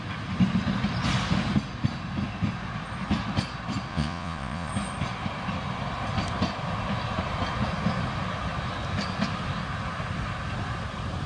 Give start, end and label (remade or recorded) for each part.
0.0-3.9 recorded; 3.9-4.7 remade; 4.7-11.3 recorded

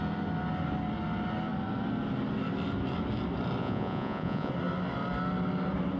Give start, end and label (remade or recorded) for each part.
0.0-3.6 recorded; 3.6-4.5 remade; 4.5-6.0 recorded